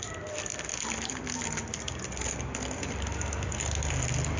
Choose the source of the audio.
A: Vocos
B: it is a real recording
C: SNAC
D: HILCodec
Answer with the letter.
B